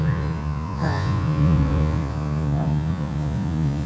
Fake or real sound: fake